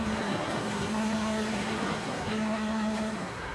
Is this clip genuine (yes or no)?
no